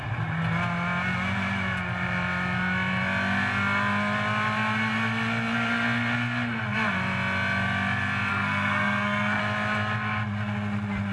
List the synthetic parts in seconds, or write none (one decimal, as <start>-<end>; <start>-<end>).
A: 8.3-9.4